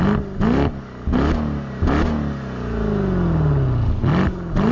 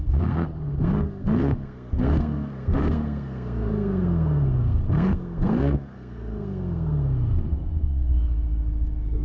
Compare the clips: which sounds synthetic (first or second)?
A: second